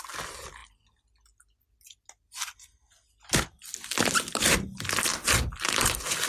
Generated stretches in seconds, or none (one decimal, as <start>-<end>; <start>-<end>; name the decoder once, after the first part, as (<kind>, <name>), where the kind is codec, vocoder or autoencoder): 5.1-6.3 (vocoder, BigVGAN v2)